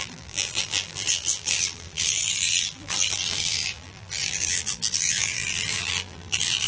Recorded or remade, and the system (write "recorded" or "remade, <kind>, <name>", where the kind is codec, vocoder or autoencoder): remade, vocoder, BigVGAN v2